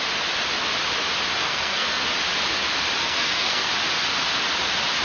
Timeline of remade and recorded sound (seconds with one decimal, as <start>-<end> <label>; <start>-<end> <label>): 0.0-1.4 recorded; 1.4-2.0 remade; 2.0-3.0 recorded; 3.0-3.7 remade; 3.7-5.0 recorded